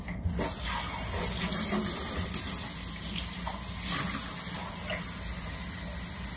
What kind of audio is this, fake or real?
real